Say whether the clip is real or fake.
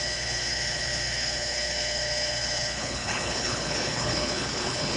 fake